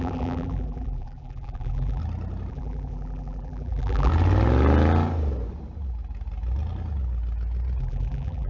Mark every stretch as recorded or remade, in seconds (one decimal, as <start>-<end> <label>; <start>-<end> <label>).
0.0-2.0 remade; 2.0-2.5 recorded; 2.5-4.1 remade; 4.1-7.8 recorded; 7.8-8.5 remade